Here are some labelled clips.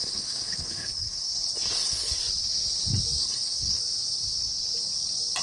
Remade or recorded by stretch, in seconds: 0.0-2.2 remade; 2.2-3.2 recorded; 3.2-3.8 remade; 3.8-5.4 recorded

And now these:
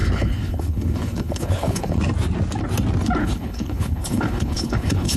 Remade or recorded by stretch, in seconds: 0.0-2.0 remade; 2.0-3.2 recorded; 3.2-5.2 remade